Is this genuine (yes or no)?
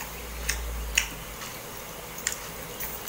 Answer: yes